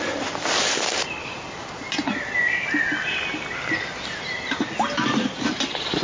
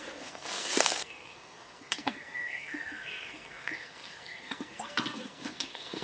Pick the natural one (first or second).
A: first